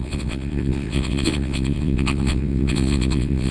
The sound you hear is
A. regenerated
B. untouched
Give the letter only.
A